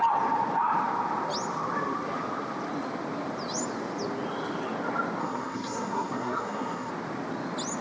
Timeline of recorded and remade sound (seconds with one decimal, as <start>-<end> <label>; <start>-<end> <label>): 0.0-5.2 recorded; 5.2-6.9 remade; 6.9-7.8 recorded